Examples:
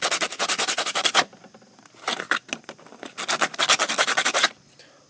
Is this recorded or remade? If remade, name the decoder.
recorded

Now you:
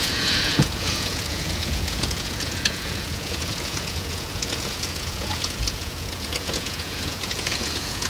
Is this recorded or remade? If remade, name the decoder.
remade, vocoder, Vocos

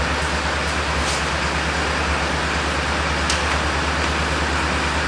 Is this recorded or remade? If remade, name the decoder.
recorded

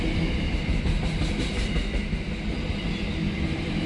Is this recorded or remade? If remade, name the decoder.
recorded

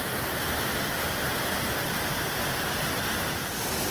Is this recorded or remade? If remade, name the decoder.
recorded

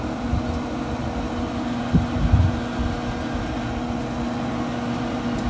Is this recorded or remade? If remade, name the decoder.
recorded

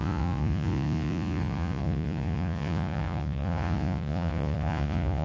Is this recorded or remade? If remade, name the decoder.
remade, vocoder, Vocos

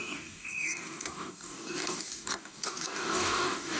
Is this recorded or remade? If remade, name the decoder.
remade, codec, DAC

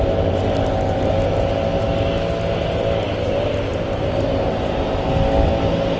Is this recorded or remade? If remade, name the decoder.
recorded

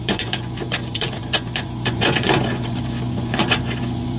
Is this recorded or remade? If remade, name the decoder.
remade, vocoder, Vocos